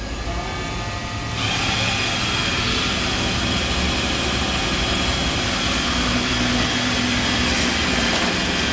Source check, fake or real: real